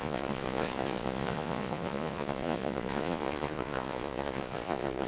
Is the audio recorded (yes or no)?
no